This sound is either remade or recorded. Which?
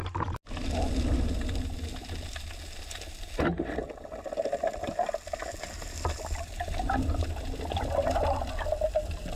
recorded